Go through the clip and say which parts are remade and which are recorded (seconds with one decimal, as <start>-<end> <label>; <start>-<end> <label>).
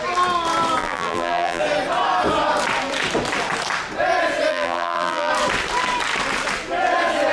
0.0-0.8 recorded; 0.8-1.6 remade; 1.6-4.5 recorded; 4.5-5.3 remade; 5.3-7.3 recorded